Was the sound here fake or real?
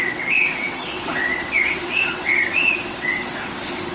fake